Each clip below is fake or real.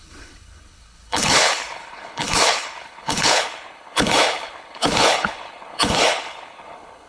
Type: fake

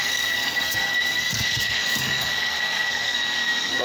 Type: fake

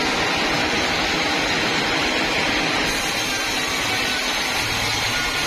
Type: real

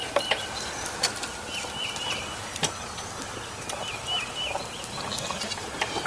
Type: real